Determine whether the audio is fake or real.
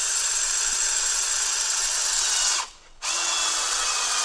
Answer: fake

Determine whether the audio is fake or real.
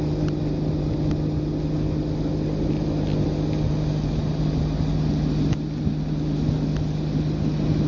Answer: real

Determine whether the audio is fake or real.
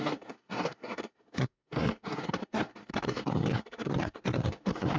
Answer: fake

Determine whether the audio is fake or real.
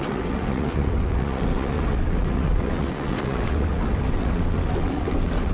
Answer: fake